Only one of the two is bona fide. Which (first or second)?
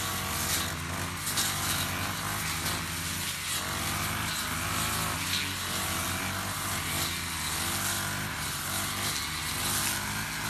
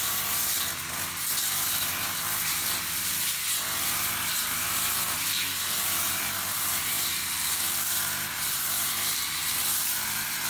first